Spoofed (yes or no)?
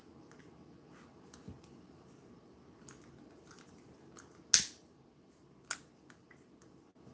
no